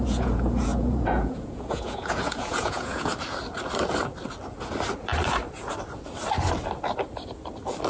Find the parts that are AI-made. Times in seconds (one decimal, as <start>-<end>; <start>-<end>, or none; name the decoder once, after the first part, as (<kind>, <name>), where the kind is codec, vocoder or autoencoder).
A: 0.0-3.1 (vocoder, Vocos)